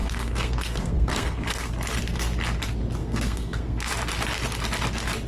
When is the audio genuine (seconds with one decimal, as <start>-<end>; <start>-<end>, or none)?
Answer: 1.7-3.0; 3.9-5.3